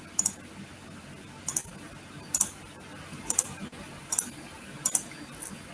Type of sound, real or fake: real